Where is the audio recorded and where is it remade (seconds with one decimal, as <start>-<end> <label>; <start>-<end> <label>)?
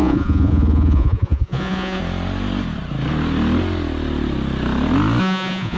0.0-2.0 remade; 2.0-5.2 recorded; 5.2-5.8 remade